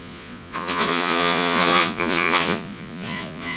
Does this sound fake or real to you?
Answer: fake